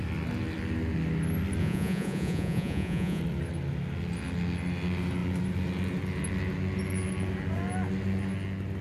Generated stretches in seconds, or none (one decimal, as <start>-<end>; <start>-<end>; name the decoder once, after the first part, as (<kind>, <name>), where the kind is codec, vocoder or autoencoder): 1.6-3.2 (vocoder, Vocos)